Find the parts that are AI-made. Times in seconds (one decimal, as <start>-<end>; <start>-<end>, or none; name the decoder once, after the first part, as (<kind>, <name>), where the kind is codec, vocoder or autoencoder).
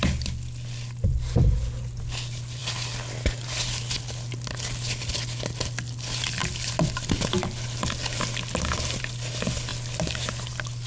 none